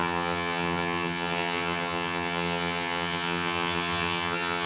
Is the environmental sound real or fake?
fake